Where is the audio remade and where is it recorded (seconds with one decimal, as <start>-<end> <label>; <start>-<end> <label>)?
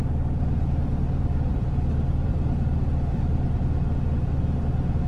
0.0-1.5 recorded; 1.5-4.6 remade; 4.6-5.1 recorded